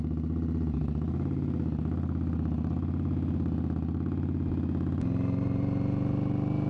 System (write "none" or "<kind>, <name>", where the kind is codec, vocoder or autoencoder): none